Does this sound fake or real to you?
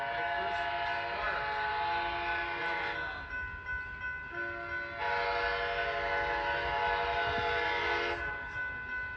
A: real